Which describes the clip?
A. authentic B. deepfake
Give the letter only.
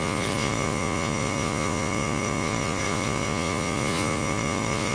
B